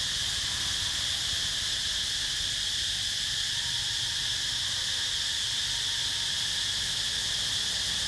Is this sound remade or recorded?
recorded